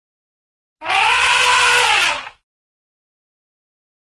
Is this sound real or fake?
real